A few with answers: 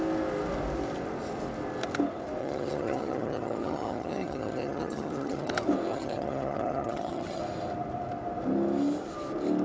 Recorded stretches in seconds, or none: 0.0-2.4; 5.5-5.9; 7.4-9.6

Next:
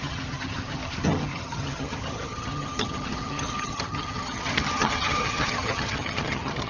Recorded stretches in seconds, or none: none

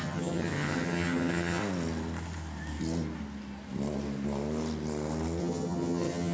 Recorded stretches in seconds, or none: 1.6-5.4

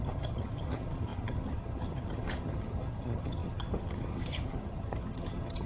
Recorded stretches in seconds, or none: none